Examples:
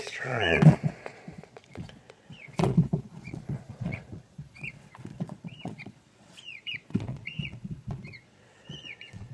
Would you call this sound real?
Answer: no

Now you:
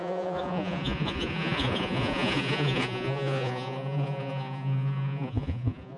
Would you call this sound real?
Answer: no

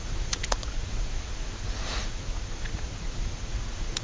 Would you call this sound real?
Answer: no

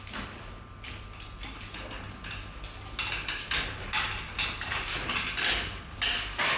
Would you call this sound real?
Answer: yes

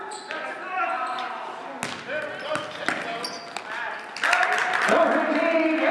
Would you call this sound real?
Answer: yes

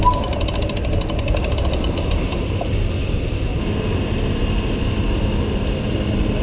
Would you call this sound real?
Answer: yes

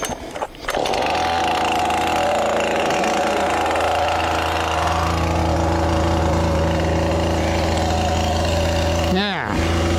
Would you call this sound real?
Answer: yes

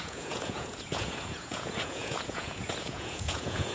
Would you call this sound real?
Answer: no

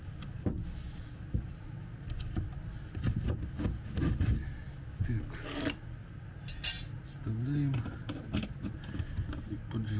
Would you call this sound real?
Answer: yes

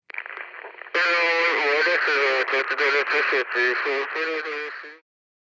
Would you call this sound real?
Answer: yes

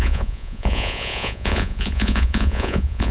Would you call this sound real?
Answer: no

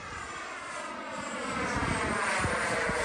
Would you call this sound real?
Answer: yes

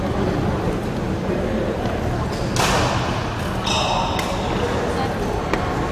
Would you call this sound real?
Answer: yes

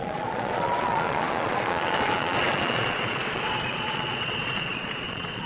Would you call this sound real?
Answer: no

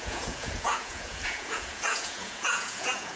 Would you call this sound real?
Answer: no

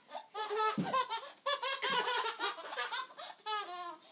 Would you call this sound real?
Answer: yes